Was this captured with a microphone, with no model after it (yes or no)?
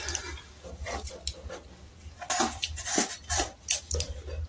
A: no